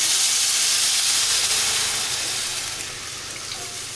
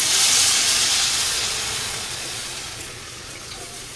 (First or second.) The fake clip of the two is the second